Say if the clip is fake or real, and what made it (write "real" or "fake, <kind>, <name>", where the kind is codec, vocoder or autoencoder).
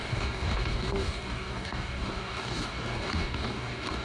fake, codec, DAC